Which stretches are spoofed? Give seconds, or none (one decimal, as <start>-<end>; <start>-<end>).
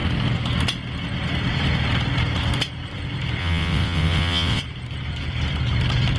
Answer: 3.4-4.6